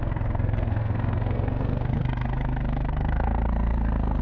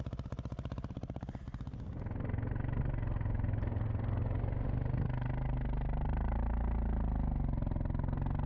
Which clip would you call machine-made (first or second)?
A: first